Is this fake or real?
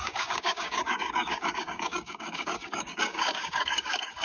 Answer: fake